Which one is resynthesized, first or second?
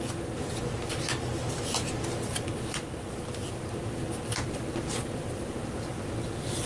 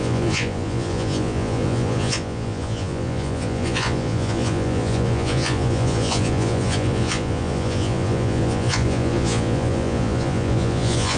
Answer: second